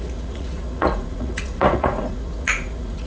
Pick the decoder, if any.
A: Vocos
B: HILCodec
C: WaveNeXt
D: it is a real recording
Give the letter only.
A